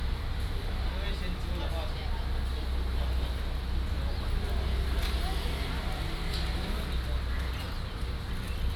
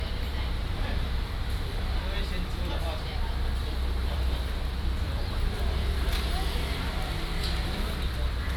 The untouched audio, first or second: first